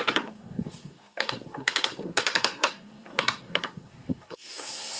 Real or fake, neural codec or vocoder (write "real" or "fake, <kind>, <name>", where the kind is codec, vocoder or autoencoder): fake, codec, SNAC